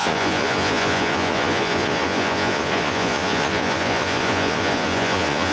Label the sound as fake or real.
fake